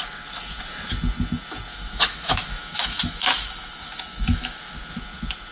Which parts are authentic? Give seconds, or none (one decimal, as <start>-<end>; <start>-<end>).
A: 0.0-1.7; 5.0-5.5